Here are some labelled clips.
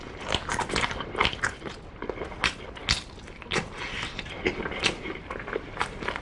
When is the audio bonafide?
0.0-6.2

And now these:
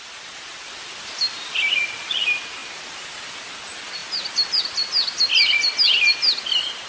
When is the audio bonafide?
0.0-6.9

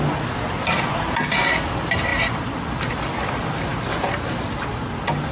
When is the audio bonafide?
0.0-5.3

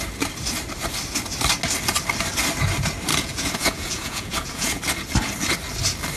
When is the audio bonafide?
0.0-3.1; 4.8-6.2